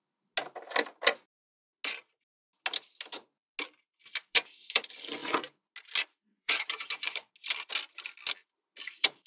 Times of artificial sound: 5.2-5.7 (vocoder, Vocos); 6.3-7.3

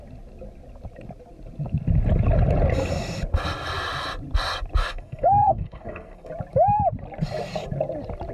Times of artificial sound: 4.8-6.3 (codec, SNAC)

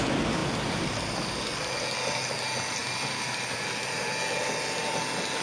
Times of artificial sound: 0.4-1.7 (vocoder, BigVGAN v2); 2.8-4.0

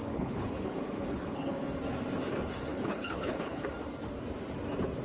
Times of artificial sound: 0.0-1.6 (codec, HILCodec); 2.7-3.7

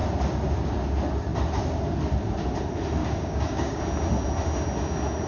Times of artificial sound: 3.0-3.8 (codec, DAC)

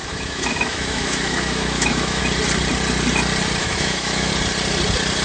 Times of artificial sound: 0.0-2.2 (autoencoder, DAC-VAE); 3.6-4.3

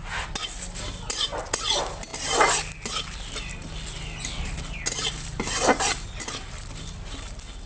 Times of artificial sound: none

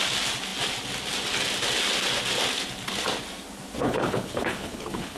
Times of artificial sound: 3.8-5.2 (codec, HILCodec)